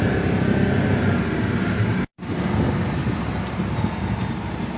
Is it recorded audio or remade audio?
recorded